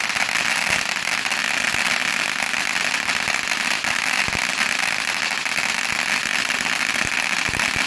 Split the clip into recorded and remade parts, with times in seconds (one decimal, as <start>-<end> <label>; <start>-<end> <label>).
0.0-7.9 recorded